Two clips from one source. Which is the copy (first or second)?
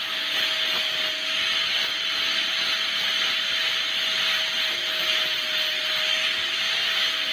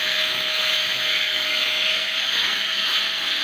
second